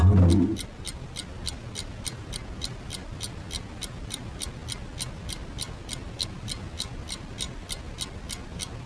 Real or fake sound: real